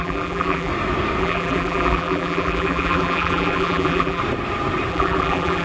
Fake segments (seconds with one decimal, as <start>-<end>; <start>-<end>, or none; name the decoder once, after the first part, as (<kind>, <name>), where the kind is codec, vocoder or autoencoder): 0.0-0.7 (vocoder, BigVGAN v2); 1.2-4.2; 4.9-5.6